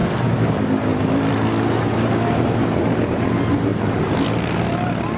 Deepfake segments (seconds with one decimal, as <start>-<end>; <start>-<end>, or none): 0.9-1.8